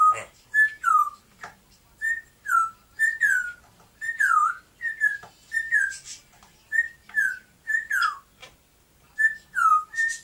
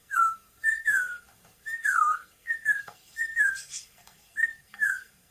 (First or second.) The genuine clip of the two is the first